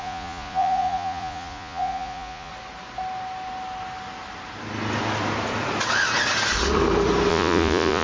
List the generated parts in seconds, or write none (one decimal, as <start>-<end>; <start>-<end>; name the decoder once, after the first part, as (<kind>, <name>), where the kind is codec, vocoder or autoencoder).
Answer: 0.0-2.5 (vocoder, Vocos); 7.3-8.0